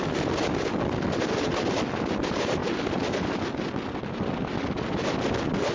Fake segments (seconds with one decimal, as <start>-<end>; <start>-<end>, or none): none